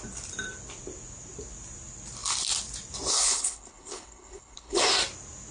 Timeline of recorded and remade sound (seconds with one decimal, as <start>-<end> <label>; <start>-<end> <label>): 0.0-3.1 recorded; 3.1-4.8 remade; 4.8-5.5 recorded